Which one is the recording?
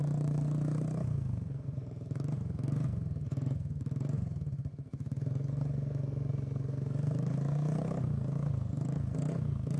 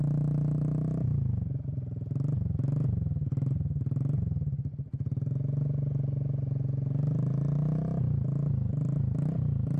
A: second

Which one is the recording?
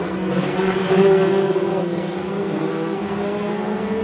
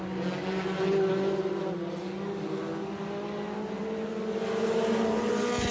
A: second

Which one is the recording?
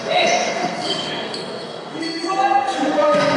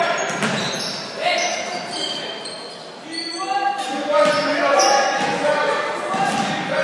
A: second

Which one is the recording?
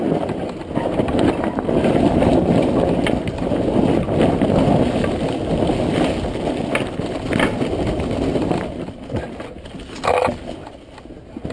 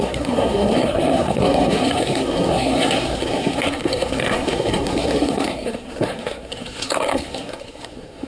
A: first